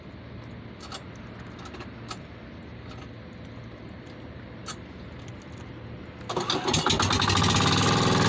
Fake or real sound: real